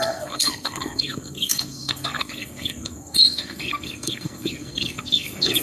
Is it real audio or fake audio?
fake